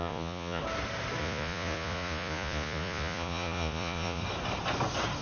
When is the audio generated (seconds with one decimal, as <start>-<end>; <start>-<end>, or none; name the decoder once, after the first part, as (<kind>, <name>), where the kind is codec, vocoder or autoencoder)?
0.0-0.6 (vocoder, Vocos); 1.2-4.2